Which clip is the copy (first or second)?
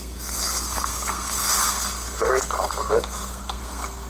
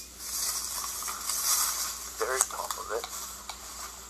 first